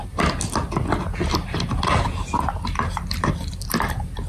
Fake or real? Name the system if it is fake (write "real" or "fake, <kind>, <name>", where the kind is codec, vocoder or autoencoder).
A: real